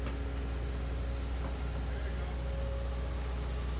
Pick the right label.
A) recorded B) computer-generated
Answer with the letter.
A